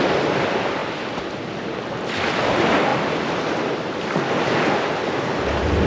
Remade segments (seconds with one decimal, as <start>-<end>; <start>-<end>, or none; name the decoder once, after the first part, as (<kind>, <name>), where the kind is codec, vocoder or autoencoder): none